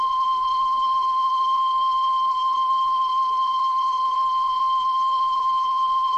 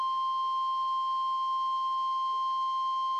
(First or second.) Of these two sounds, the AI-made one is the first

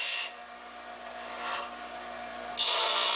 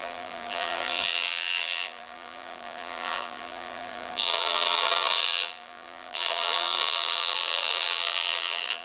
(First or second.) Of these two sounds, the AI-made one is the second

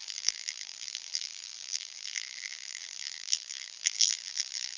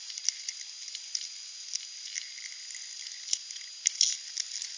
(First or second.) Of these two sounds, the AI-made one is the first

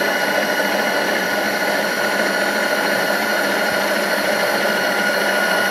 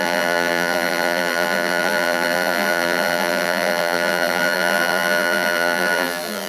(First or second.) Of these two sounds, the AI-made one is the second